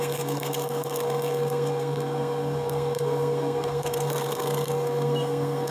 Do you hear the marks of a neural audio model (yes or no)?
yes